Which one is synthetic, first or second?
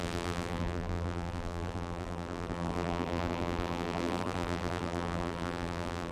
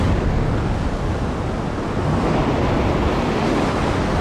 first